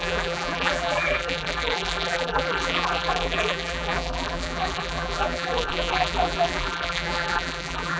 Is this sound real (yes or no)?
no